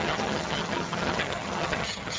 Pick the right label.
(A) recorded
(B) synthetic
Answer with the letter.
B